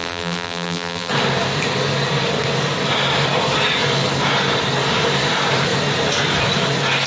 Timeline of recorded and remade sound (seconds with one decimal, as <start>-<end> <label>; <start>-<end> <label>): 0.0-1.1 remade; 1.1-7.1 recorded